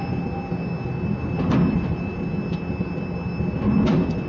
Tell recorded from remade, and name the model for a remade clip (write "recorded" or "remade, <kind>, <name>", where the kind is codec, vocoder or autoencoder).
recorded